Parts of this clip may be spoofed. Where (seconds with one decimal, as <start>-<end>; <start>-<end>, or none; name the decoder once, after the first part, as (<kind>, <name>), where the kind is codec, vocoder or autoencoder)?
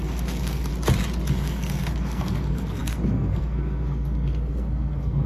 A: 0.0-0.7 (codec, SNAC); 1.3-5.3